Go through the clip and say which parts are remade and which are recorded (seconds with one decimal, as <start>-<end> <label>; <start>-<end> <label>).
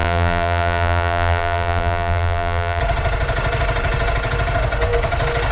0.0-2.8 remade; 2.8-5.5 recorded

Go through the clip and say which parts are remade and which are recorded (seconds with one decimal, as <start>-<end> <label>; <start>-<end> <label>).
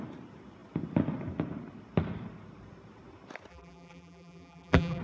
0.0-3.5 recorded; 3.5-5.0 remade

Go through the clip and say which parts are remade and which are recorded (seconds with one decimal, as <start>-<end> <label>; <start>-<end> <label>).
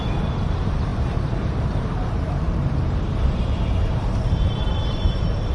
0.0-5.5 remade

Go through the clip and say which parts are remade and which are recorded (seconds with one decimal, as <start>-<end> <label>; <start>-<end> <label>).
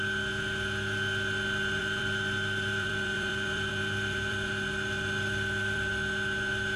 0.0-1.8 recorded; 1.8-5.9 remade; 5.9-6.8 recorded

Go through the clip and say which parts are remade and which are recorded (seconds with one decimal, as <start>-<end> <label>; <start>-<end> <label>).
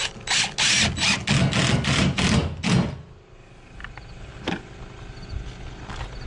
0.0-6.3 recorded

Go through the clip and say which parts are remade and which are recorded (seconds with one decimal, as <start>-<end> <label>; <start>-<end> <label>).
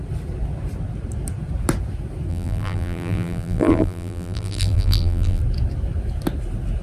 0.0-2.3 recorded; 2.3-5.4 remade; 5.4-6.8 recorded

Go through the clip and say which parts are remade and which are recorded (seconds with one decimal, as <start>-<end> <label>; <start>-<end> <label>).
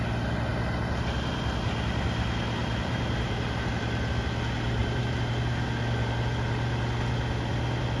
0.0-2.6 recorded; 2.6-3.7 remade; 3.7-4.8 recorded; 4.8-5.3 remade; 5.3-8.0 recorded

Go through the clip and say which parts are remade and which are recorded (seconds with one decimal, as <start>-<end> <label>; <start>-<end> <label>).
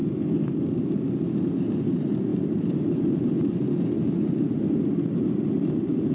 0.0-1.4 recorded; 1.4-6.1 remade